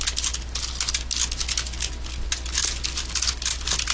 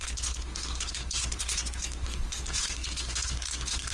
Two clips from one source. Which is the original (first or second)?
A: first